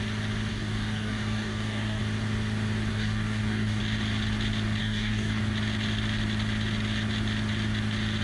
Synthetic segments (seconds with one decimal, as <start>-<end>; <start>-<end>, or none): 0.5-2.0; 2.9-3.8; 4.8-5.4